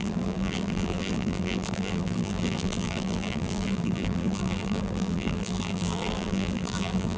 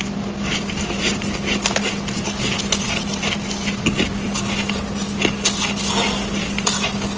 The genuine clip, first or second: second